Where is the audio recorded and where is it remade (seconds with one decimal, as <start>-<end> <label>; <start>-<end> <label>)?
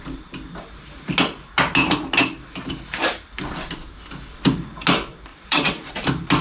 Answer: 0.0-5.3 recorded; 5.3-5.9 remade; 5.9-6.4 recorded